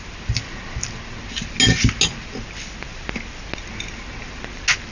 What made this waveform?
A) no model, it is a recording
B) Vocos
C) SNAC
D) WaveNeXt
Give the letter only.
A